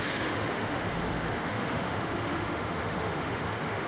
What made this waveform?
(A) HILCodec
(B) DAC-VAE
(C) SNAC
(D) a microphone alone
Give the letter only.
B